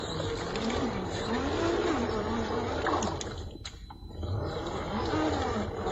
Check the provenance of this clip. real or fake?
real